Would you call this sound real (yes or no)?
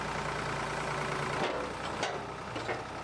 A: yes